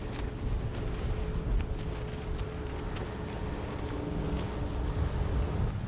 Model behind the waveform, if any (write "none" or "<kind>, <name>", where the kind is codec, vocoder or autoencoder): none